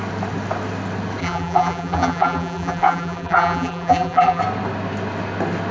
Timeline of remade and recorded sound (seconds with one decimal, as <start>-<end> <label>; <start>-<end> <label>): 0.0-1.2 recorded; 1.2-4.4 remade; 4.4-5.7 recorded